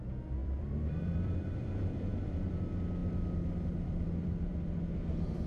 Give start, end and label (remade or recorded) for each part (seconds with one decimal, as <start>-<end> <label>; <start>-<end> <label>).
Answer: 0.0-0.4 recorded; 0.4-2.5 remade; 2.5-3.0 recorded; 3.0-4.5 remade; 4.5-5.5 recorded